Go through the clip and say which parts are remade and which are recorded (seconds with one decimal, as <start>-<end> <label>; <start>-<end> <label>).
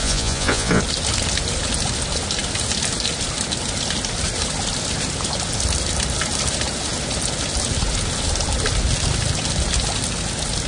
0.0-0.8 remade; 0.8-10.7 recorded